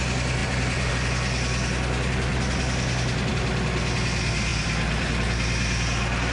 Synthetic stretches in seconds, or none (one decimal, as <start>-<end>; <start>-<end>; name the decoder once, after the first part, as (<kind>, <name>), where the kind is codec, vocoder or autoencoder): 0.4-0.9 (vocoder, BigVGAN v2); 4.5-5.1